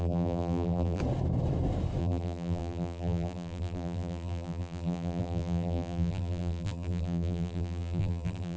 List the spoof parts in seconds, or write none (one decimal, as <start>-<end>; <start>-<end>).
0.0-1.0; 2.0-8.6

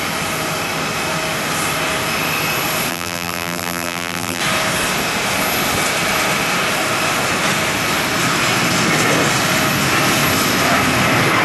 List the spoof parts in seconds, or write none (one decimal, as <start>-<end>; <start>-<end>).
2.9-4.4

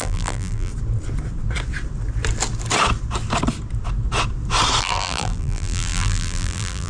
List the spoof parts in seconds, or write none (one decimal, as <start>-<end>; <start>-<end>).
0.0-0.7; 4.8-6.9

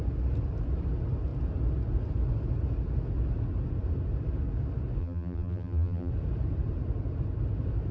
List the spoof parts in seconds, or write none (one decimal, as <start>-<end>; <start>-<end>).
5.0-6.1

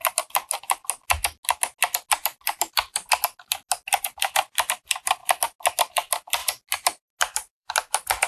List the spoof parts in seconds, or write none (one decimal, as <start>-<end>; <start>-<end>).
0.0-0.8; 4.0-5.2; 5.9-6.4; 7.2-8.3

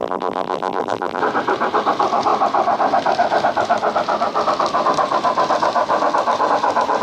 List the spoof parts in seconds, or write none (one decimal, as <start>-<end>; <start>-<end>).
0.0-1.2

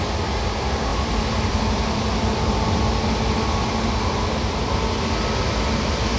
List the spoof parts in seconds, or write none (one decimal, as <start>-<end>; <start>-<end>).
0.9-1.8

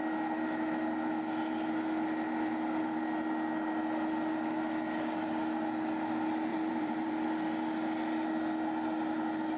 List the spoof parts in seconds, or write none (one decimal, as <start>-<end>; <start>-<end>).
6.5-7.1